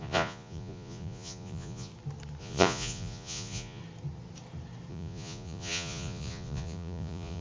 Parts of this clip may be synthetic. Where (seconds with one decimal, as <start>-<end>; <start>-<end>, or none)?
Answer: 0.0-1.9; 2.4-3.8; 4.9-7.4